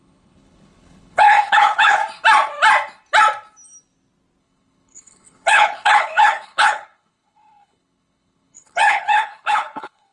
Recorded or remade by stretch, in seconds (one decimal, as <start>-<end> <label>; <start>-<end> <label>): 0.0-2.0 remade; 2.0-4.4 recorded; 4.4-10.1 remade